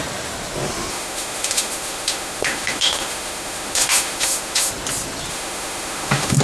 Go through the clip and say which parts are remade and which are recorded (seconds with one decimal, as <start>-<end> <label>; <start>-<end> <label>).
0.0-0.9 recorded; 0.9-4.7 remade; 4.7-5.3 recorded; 5.3-6.4 remade